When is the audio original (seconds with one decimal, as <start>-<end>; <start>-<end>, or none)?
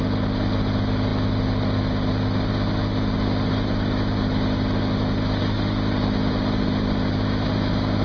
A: 0.0-8.0